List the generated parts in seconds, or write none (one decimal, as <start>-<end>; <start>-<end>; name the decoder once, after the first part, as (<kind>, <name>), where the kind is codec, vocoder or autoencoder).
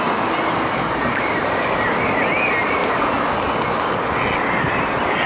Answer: none